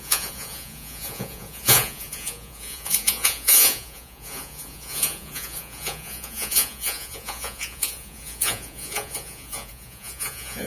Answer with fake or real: fake